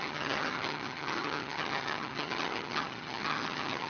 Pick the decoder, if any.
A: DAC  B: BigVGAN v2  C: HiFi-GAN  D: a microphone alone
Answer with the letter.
C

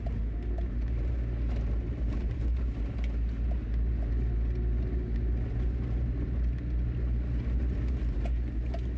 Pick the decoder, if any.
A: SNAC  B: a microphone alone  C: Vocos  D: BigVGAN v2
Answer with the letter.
B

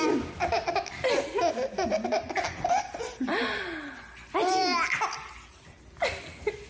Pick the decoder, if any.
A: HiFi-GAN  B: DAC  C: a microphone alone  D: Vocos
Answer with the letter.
C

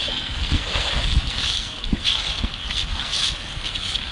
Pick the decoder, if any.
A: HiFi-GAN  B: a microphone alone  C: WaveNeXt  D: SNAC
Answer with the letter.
D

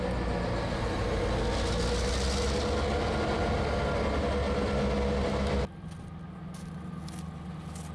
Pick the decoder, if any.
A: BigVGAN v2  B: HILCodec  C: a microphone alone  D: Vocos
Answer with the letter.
C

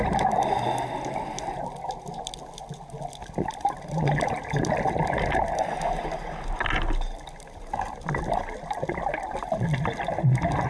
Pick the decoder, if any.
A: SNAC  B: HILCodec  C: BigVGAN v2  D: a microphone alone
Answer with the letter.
D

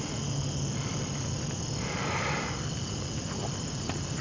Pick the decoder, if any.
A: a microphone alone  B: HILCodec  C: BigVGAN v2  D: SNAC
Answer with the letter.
A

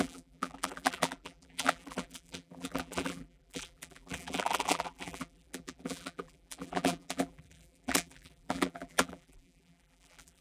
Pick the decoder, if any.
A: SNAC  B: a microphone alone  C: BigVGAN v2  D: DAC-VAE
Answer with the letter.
C